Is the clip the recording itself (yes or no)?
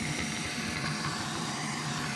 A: yes